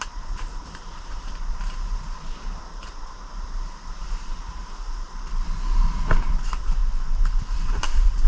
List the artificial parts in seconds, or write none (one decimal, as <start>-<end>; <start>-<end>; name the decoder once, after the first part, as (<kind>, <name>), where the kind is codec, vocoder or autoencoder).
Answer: 0.0-4.6 (vocoder, BigVGAN v2); 6.2-6.8; 7.5-8.3